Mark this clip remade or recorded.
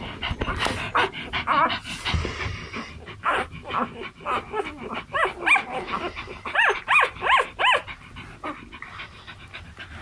recorded